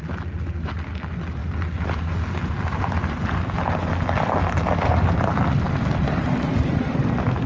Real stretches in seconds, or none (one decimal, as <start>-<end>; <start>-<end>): 0.0-1.4; 4.6-7.5